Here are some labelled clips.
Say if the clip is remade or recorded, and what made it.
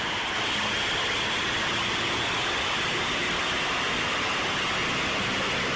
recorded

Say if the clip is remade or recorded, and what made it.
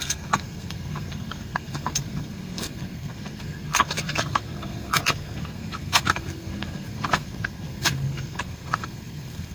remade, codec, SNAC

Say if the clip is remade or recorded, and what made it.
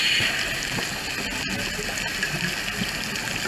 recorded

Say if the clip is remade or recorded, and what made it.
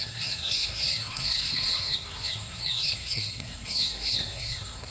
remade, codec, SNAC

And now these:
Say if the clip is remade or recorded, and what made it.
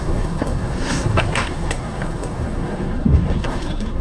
remade, codec, SNAC